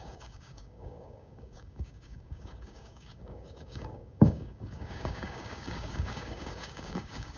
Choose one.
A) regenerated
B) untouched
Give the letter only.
A